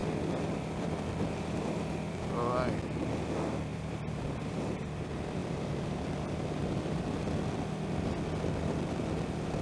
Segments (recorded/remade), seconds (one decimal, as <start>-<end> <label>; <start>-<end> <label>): 0.0-3.7 recorded; 3.7-4.6 remade; 4.6-5.4 recorded; 5.4-6.1 remade; 6.1-6.6 recorded; 6.6-7.2 remade; 7.2-9.6 recorded